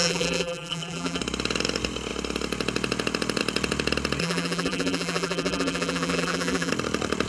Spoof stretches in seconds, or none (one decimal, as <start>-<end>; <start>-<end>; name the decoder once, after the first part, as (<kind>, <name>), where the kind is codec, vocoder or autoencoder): 0.0-1.2 (vocoder, BigVGAN v2); 4.2-6.7